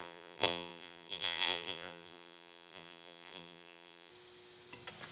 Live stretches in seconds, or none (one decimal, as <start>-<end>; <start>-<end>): 4.1-5.1